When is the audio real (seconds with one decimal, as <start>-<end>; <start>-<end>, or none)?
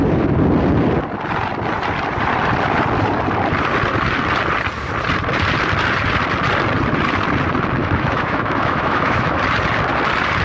0.0-7.8; 9.4-10.4